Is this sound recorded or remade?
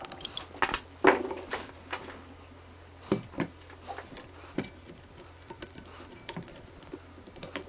recorded